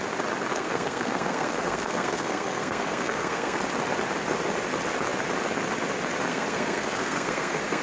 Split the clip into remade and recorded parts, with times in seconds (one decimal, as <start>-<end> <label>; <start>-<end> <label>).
0.0-0.5 recorded; 0.5-3.6 remade; 3.6-6.3 recorded; 6.3-7.8 remade